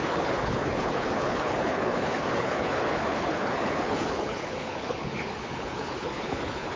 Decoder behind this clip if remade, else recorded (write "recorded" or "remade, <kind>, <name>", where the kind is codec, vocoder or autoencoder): remade, codec, HILCodec